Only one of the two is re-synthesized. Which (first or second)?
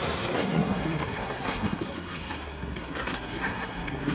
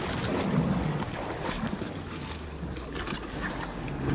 first